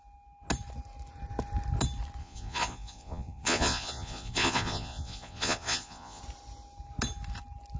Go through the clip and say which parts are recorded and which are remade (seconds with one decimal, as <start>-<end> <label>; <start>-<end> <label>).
0.0-2.2 recorded; 2.2-6.2 remade; 6.2-7.8 recorded